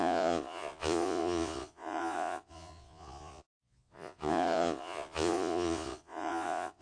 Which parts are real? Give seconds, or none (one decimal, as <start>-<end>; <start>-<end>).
none